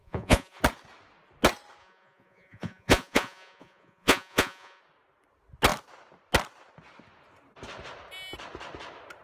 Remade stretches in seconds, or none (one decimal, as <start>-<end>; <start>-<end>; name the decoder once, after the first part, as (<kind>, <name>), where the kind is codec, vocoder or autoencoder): 0.0-0.6 (vocoder, Vocos); 1.8-4.8